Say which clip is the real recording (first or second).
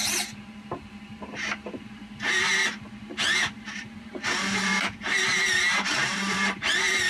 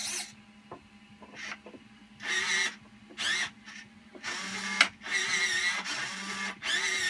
second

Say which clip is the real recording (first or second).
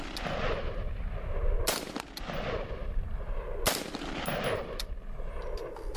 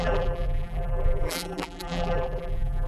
first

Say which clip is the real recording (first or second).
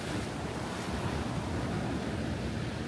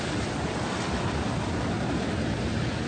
first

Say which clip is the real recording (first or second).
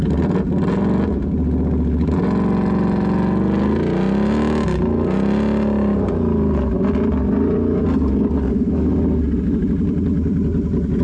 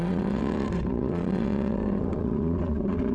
first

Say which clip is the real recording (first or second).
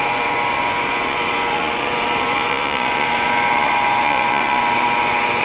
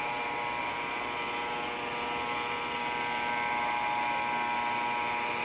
second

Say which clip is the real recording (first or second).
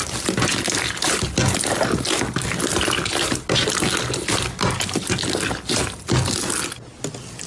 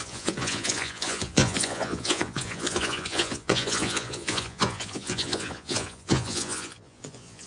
first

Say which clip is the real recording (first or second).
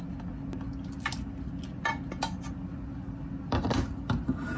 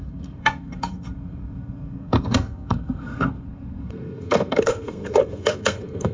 first